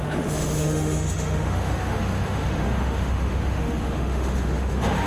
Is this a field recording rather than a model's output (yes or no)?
no